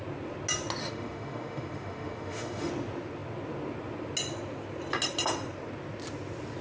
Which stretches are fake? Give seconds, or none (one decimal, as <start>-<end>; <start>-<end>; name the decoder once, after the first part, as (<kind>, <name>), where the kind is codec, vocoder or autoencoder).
0.8-2.7 (autoencoder, DAC-VAE)